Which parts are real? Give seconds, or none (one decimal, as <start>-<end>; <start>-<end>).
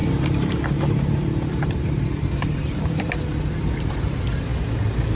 3.1-5.2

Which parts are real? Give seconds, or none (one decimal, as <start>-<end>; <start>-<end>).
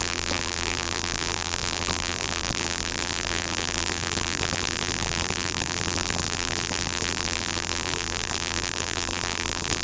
none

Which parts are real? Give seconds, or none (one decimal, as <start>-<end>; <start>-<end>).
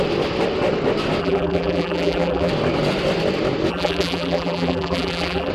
0.0-1.2; 2.5-3.7